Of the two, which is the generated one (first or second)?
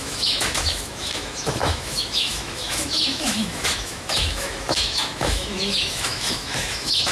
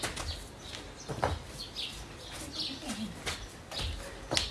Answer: first